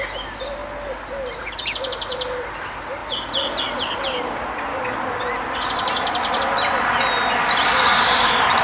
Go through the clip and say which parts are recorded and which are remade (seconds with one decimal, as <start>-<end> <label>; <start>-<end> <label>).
0.0-4.7 recorded; 4.7-5.2 remade; 5.2-8.6 recorded